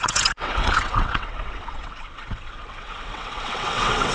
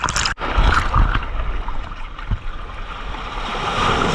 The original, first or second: second